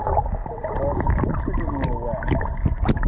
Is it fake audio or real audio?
real